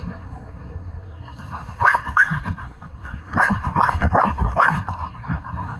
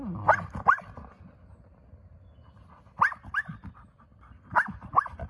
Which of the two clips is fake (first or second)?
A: first